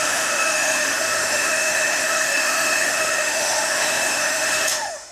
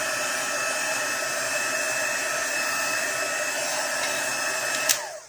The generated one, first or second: first